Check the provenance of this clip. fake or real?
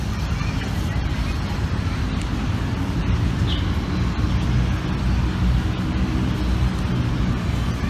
real